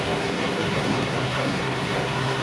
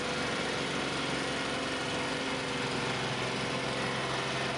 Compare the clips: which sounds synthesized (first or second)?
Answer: first